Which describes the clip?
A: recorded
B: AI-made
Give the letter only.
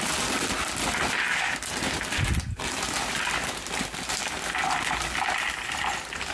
A